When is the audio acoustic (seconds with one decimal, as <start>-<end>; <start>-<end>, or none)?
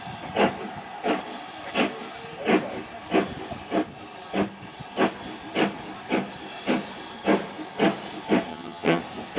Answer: 0.0-8.5; 9.0-9.4